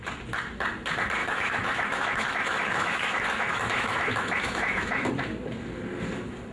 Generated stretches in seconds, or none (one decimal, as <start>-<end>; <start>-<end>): 1.2-5.1

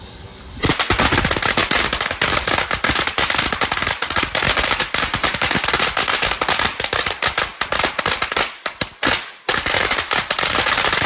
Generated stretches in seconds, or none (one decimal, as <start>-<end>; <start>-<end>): 0.0-1.6; 2.3-7.5; 8.0-11.1

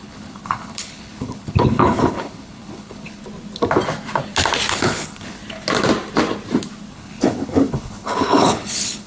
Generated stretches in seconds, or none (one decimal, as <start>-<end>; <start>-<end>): 0.0-3.2; 4.7-5.4; 6.9-9.1

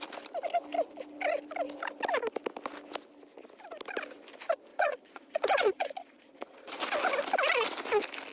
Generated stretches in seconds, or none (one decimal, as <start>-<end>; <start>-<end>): 4.7-6.8

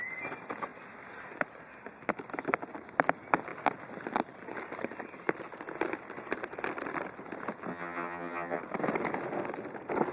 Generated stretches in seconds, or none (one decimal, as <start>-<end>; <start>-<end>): 7.7-8.6

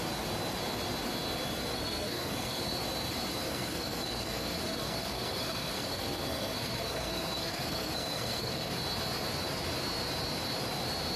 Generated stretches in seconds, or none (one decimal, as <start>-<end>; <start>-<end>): 1.7-2.7; 3.5-8.7

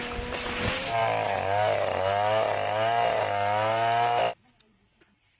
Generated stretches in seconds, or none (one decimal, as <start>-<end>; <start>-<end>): none